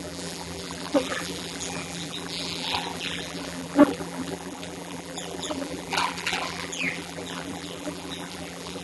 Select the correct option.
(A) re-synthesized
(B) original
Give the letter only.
A